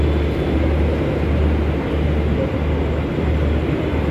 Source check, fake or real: real